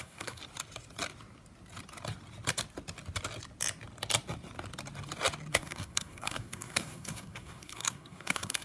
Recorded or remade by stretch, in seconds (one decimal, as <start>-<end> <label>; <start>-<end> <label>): 0.0-0.4 remade; 0.4-5.5 recorded; 5.5-8.6 remade